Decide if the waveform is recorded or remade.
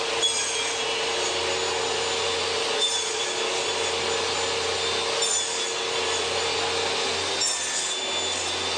recorded